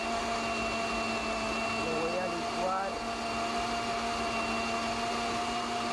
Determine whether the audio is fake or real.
real